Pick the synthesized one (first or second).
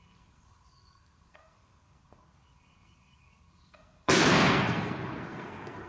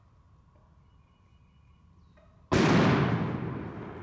first